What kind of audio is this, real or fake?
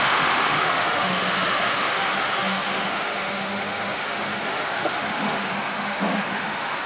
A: fake